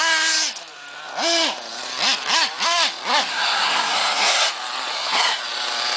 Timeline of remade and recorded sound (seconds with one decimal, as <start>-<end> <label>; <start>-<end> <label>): 0.0-3.3 recorded; 3.3-4.5 remade; 4.5-4.9 recorded; 4.9-5.4 remade; 5.4-6.0 recorded